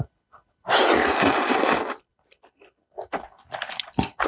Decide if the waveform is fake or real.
real